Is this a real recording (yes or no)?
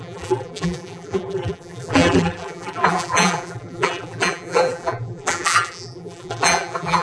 no